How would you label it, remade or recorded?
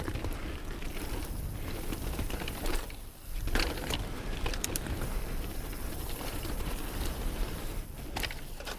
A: remade